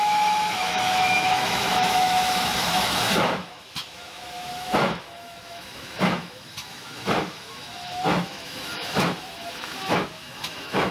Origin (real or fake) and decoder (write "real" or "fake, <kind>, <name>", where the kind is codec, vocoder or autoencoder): fake, autoencoder, DAC-VAE